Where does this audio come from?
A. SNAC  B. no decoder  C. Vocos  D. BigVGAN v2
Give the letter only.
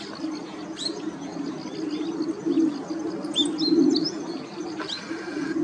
B